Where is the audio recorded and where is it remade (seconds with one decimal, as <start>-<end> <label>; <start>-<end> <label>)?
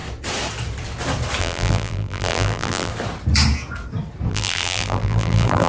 0.0-1.4 recorded; 1.4-2.9 remade; 2.9-4.3 recorded; 4.3-5.7 remade